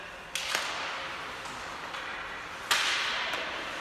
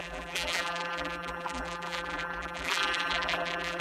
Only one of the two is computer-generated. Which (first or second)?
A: second